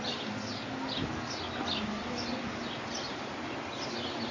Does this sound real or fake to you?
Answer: real